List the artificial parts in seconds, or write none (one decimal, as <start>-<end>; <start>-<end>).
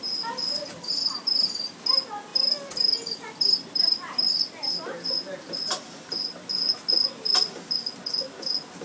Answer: none